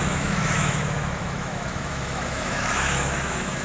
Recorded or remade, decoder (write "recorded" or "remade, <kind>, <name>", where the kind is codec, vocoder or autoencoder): remade, autoencoder, DAC-VAE